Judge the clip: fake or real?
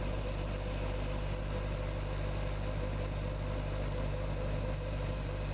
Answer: real